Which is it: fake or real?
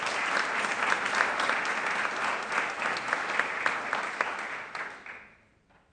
real